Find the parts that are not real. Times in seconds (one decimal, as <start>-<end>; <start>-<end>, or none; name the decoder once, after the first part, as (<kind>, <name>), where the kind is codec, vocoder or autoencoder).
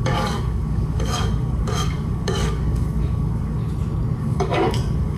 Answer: 0.0-3.6 (codec, DAC); 4.2-5.2